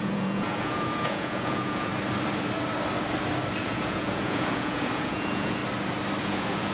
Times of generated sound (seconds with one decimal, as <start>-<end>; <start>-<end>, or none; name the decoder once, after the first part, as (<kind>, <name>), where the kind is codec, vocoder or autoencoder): 0.0-1.9 (vocoder, Vocos); 3.6-5.6; 6.2-6.7